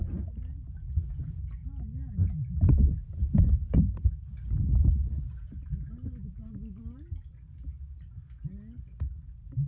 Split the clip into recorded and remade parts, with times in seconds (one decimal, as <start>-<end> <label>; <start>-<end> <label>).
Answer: 0.0-9.7 recorded